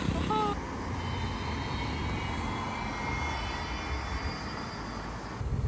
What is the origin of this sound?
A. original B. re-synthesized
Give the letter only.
A